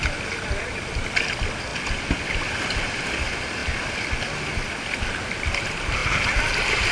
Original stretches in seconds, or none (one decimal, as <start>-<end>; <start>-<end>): 0.0-6.9